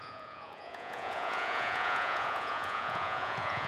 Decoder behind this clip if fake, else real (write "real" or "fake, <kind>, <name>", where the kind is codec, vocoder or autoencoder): fake, vocoder, Vocos